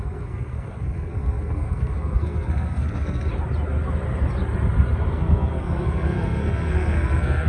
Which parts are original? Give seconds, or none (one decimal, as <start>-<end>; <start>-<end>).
3.3-5.1